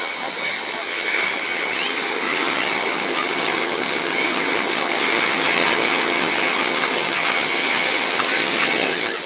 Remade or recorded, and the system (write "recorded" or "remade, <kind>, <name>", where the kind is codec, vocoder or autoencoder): remade, vocoder, HiFi-GAN